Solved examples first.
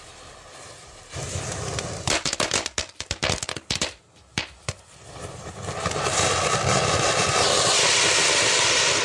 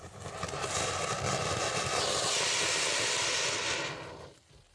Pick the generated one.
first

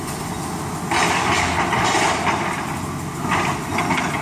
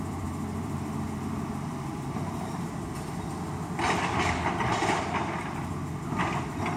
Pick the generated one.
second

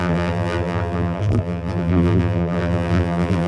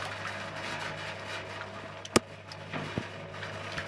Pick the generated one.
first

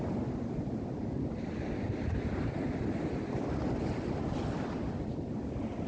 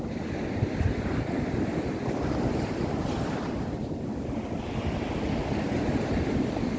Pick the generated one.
second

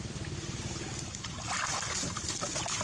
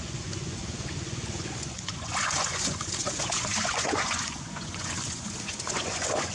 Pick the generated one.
second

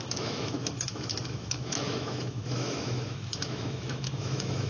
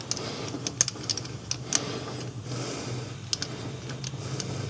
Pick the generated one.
first